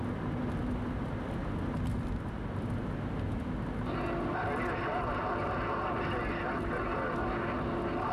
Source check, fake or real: real